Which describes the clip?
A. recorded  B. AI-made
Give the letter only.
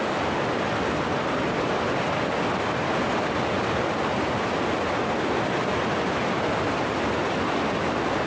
A